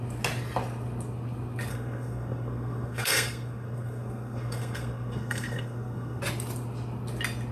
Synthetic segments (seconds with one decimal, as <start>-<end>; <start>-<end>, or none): 1.7-6.2